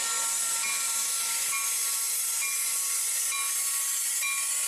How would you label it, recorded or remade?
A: recorded